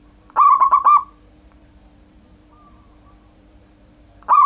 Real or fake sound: fake